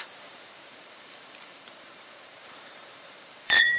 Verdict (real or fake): fake